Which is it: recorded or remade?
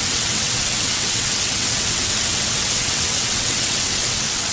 remade